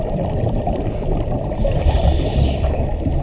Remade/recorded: recorded